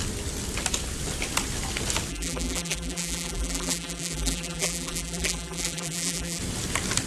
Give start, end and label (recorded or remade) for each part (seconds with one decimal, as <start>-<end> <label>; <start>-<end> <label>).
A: 0.0-2.1 recorded; 2.1-6.4 remade; 6.4-7.1 recorded